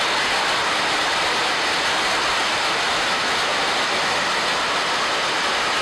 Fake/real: real